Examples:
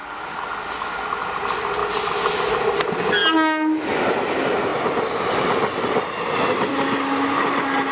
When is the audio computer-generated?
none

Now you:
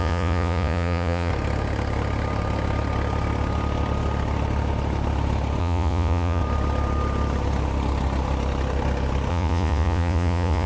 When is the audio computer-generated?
0.0-1.3 (vocoder, Vocos); 5.6-6.4; 9.3-10.7

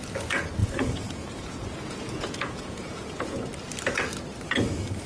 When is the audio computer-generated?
0.6-3.5 (vocoder, Vocos)

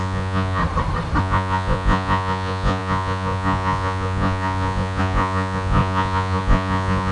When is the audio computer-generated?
0.0-0.6 (vocoder, Vocos); 1.2-7.1

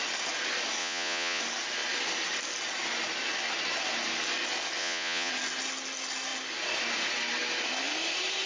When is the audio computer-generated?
0.8-1.4 (vocoder, Vocos); 4.8-5.3

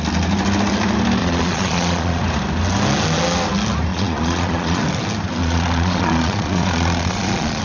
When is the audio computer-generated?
1.2-2.2 (vocoder, Vocos); 3.9-4.8; 5.4-7.6

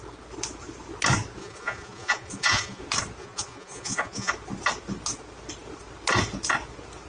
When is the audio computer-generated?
1.4-2.8 (vocoder, Vocos); 3.2-4.3